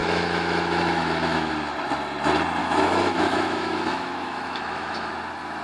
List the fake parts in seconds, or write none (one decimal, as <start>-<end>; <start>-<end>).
0.0-1.5; 2.6-5.1